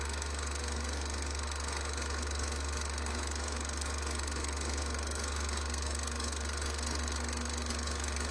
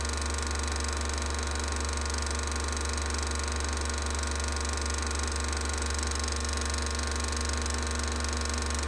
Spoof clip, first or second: first